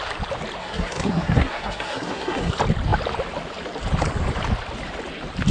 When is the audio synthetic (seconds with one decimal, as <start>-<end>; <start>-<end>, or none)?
0.6-2.5